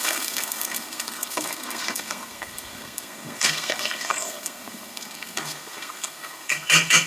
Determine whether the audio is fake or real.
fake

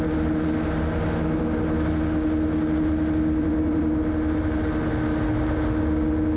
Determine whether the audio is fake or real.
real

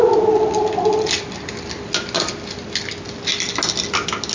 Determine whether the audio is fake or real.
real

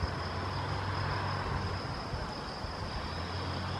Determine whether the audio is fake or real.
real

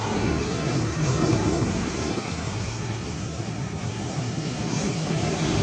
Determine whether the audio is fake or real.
fake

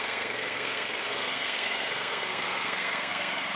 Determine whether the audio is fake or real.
fake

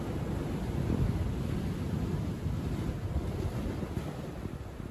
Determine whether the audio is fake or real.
real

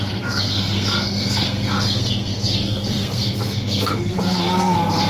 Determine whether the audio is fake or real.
fake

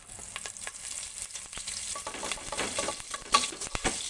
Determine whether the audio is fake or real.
real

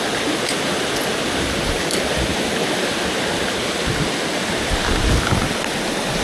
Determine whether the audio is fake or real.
real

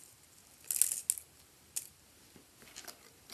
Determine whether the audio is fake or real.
real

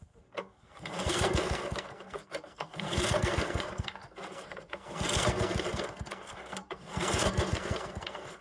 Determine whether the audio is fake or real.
fake